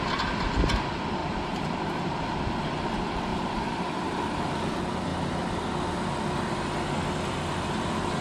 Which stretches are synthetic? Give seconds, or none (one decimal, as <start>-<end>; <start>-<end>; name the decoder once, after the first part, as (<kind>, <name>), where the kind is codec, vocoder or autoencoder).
1.2-2.3 (vocoder, BigVGAN v2); 3.3-4.2

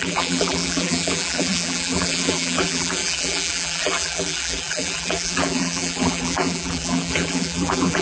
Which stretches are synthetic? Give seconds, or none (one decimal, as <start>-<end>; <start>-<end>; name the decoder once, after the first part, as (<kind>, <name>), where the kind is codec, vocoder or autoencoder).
0.0-8.0 (vocoder, BigVGAN v2)

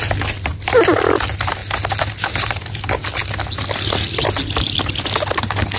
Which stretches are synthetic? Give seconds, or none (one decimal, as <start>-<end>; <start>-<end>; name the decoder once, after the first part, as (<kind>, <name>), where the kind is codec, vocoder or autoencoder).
0.0-1.6 (vocoder, BigVGAN v2); 2.1-3.2; 5.0-5.8

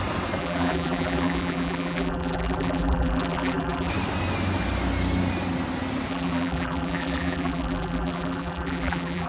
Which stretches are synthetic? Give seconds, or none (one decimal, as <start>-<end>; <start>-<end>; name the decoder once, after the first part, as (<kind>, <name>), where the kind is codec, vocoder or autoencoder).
0.4-3.9 (vocoder, BigVGAN v2); 6.1-9.3

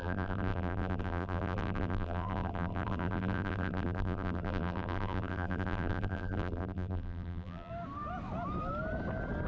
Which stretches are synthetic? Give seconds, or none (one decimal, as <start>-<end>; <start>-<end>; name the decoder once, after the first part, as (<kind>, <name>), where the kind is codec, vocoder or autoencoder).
0.0-7.7 (vocoder, BigVGAN v2)

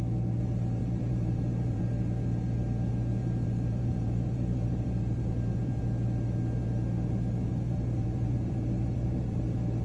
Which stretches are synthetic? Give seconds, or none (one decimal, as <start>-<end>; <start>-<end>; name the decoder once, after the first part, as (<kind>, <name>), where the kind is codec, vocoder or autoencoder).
0.8-1.8 (vocoder, BigVGAN v2); 3.2-5.8; 7.5-9.4

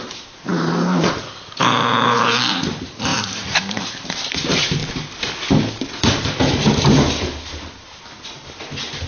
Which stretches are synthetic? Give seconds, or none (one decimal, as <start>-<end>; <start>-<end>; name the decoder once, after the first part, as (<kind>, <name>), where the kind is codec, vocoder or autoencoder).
0.0-4.8 (vocoder, BigVGAN v2); 5.7-9.1